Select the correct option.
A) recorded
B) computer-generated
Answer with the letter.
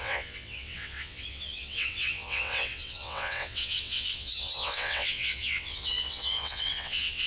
B